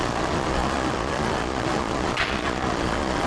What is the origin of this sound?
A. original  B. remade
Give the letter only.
B